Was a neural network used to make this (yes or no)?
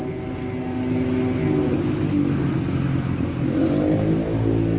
no